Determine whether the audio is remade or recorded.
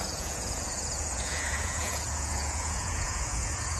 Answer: remade